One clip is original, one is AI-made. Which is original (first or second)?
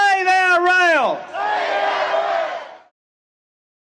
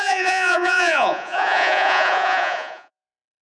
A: first